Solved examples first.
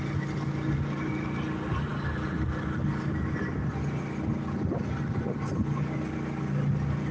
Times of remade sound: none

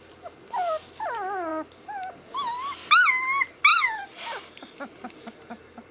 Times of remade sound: 3.7-4.8 (vocoder, BigVGAN v2)